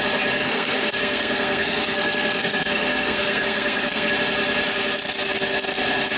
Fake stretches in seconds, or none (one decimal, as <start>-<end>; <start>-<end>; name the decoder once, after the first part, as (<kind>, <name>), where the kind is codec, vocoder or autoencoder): 0.4-4.1 (codec, SNAC)